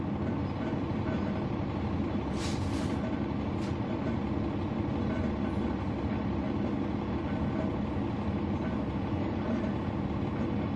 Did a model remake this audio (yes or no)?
no